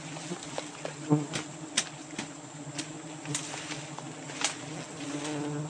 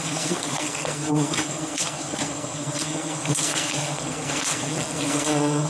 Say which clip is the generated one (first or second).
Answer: second